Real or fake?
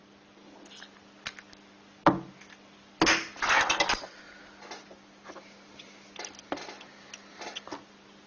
real